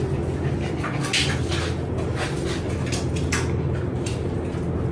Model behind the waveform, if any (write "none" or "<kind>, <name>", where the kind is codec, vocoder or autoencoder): none